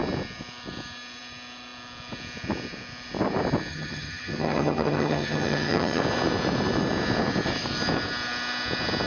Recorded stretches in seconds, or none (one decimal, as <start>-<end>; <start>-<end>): 0.0-3.7; 6.0-9.1